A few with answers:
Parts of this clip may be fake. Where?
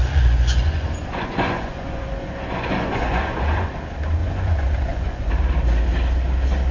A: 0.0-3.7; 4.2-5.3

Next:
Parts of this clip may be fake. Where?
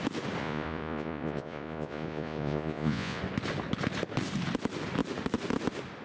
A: 0.4-3.2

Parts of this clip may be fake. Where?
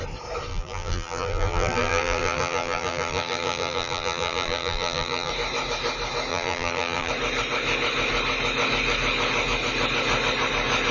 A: 0.5-5.3; 6.3-7.1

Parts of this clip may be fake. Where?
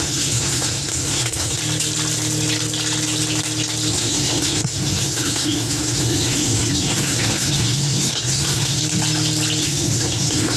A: 0.0-1.6; 3.9-8.8; 9.6-10.6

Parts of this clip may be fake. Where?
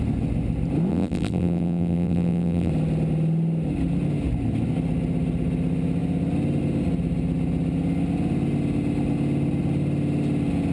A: 0.9-2.7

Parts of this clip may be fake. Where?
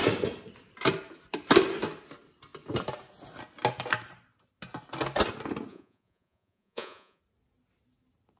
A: 5.7-7.2